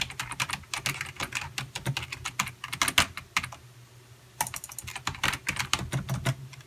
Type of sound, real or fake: real